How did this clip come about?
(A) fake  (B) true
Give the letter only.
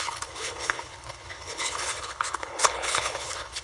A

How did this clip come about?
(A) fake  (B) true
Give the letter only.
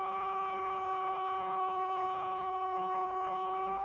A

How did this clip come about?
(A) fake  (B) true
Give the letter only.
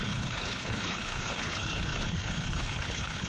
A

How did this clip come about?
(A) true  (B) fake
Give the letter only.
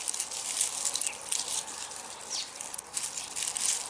A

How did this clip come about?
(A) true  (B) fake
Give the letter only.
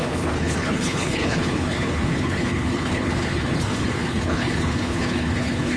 B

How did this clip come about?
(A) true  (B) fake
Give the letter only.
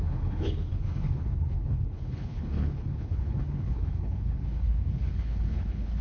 B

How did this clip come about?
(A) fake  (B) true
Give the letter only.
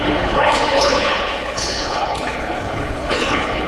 A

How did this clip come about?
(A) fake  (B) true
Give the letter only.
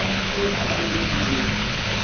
A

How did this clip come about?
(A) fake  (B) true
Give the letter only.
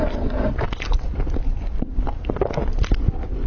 B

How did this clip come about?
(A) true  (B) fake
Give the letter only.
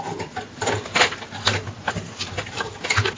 A